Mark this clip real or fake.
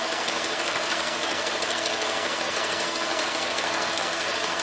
fake